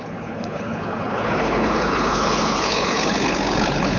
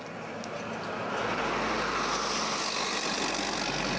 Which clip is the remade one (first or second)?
first